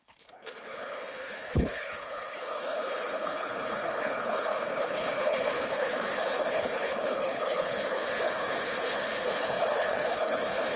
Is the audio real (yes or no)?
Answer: no